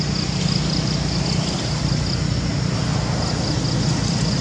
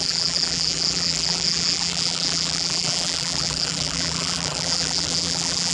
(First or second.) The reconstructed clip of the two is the second